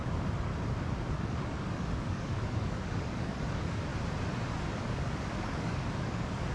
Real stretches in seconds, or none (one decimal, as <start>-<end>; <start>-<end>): 0.5-1.2; 3.9-4.7

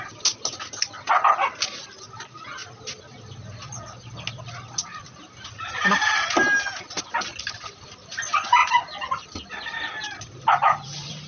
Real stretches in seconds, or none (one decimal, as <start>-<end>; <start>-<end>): 0.0-11.3

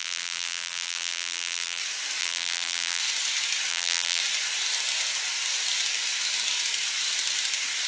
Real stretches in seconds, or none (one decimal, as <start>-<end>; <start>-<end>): 1.8-2.2; 3.0-3.7; 4.2-7.9

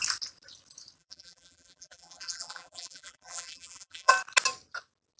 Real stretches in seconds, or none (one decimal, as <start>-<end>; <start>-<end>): 0.0-1.0; 4.1-5.2

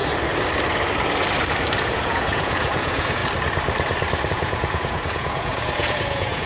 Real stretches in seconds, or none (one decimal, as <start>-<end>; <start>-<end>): 0.0-1.8; 3.2-4.3

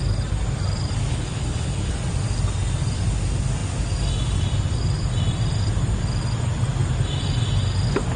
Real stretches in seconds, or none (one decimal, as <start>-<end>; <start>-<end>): 0.0-1.1; 1.9-8.2

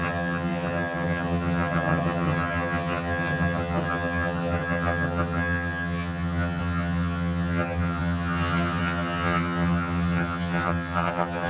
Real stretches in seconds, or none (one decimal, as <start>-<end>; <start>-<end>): none

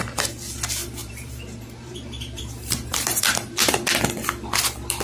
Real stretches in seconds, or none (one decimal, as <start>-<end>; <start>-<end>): 0.0-1.0; 4.0-5.0